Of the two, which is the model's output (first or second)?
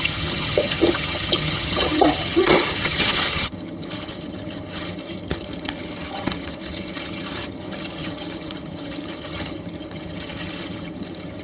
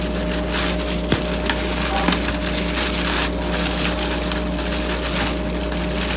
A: first